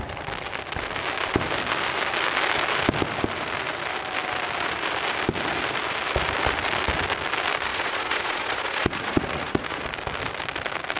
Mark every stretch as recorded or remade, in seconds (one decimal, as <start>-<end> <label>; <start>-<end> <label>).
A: 0.0-7.7 recorded; 7.7-9.8 remade; 9.8-11.0 recorded